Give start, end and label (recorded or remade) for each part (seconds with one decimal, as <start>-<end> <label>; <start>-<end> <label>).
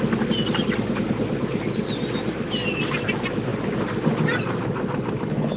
0.0-5.6 recorded